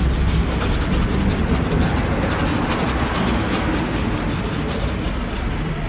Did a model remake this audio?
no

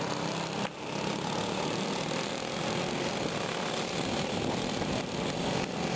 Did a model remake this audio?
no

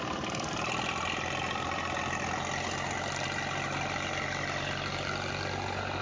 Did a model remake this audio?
no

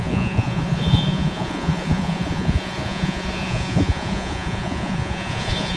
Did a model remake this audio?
yes